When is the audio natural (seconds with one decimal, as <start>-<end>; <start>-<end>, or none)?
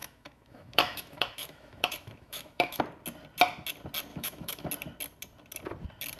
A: 2.8-4.1; 4.7-6.2